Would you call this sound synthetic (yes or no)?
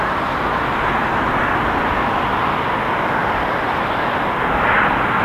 no